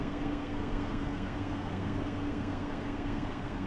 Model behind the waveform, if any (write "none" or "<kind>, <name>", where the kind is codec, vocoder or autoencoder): codec, SNAC